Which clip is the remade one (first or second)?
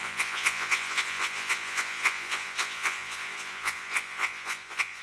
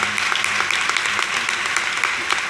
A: first